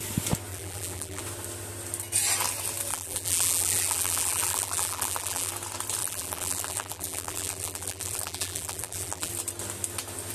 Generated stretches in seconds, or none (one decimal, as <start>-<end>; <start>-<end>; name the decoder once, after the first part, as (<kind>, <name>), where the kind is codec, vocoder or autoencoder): 0.5-1.2 (vocoder, BigVGAN v2); 2.9-5.5; 6.0-9.3